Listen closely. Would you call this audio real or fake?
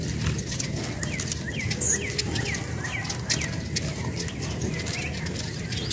real